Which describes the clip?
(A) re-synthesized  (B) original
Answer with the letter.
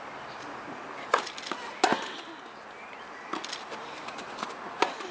B